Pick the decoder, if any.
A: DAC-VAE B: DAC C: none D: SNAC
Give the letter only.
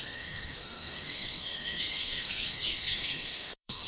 D